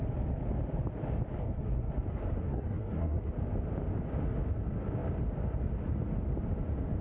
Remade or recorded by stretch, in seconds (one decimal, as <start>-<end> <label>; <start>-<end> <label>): 0.0-1.4 recorded; 1.4-1.9 remade; 1.9-2.4 recorded; 2.4-3.3 remade; 3.3-7.0 recorded